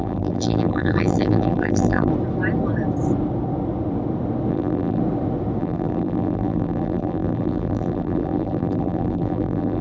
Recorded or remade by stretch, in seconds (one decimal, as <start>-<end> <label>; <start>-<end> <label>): 0.0-2.1 remade; 2.1-4.5 recorded; 4.5-5.0 remade; 5.0-5.6 recorded; 5.6-9.8 remade